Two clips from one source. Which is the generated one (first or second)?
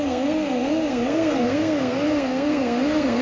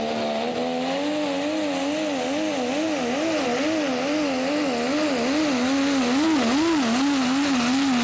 first